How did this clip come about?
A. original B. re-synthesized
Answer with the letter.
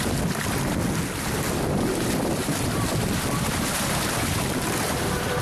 A